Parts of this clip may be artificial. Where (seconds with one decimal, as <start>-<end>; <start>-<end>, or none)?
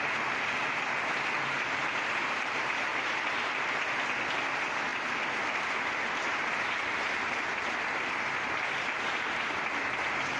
2.9-3.6